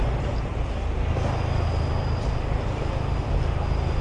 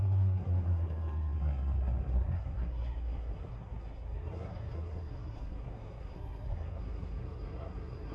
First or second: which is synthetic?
second